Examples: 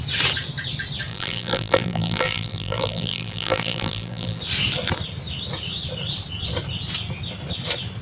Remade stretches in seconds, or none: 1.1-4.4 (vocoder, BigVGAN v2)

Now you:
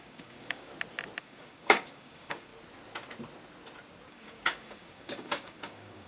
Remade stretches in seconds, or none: 0.0-0.7 (codec, DAC); 1.2-2.5; 4.1-6.1